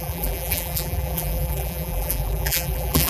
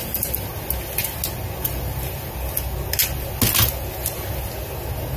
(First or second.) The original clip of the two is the second